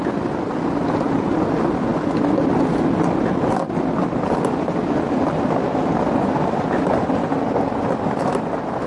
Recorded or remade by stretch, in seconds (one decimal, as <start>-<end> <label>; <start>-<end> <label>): 0.0-8.9 recorded